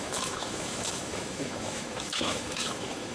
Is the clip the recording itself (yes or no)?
no